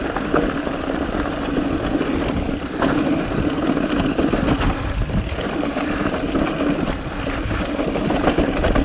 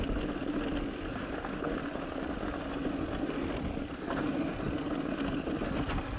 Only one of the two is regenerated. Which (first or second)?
first